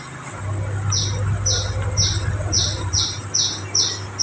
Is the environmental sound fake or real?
real